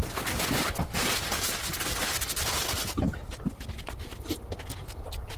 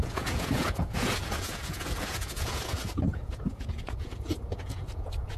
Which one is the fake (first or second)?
second